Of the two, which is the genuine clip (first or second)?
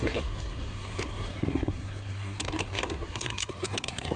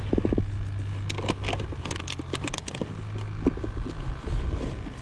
second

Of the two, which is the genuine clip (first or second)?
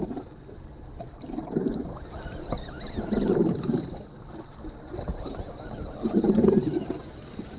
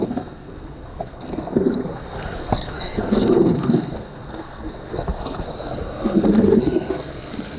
first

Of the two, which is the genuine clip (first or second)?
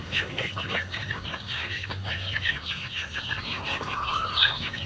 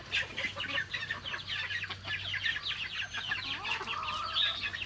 second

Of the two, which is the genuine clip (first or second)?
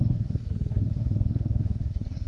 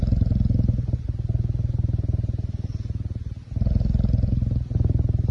second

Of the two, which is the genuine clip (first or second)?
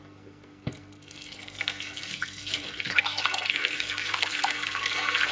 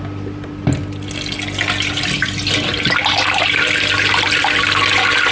second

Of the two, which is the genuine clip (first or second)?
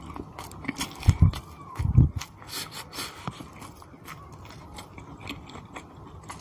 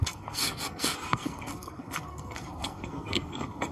first